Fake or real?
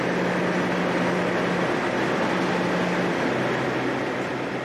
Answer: real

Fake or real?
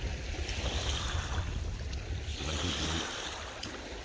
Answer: real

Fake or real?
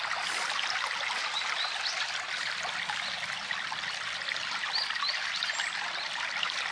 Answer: real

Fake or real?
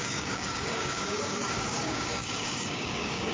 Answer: fake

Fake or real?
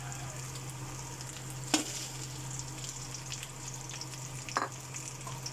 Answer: real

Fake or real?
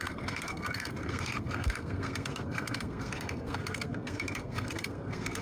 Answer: fake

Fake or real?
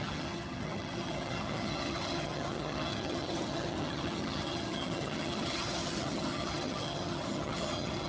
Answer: fake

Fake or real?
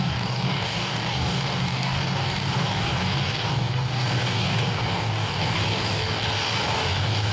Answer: fake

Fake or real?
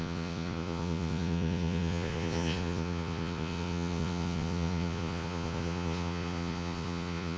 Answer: fake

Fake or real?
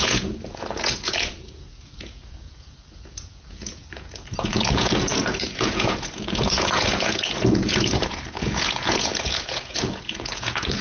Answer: fake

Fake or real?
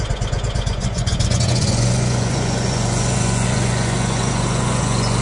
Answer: fake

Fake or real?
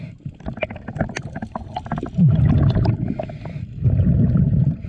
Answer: real